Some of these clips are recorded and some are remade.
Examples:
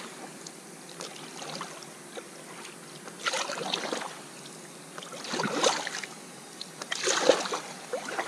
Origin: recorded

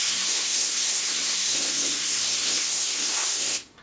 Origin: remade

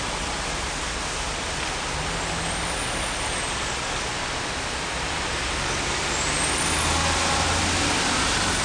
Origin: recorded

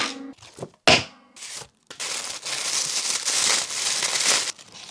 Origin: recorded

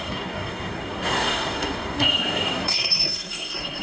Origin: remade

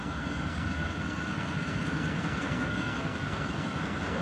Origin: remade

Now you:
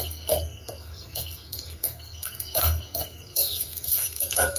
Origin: remade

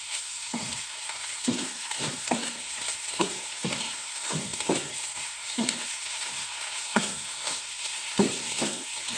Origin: remade